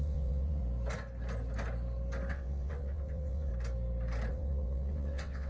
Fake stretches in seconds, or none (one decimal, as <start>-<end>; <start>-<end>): 0.0-0.6; 2.3-3.5; 4.3-5.5